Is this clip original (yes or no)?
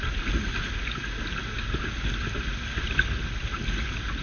yes